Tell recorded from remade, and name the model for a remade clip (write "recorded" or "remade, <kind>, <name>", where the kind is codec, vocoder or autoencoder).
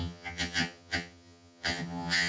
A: remade, vocoder, HiFi-GAN